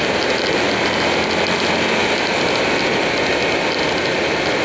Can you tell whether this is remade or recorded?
recorded